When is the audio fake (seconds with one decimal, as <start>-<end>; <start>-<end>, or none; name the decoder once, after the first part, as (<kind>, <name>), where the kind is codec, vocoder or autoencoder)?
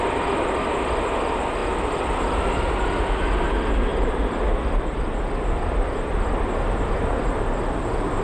3.9-7.1 (vocoder, BigVGAN v2)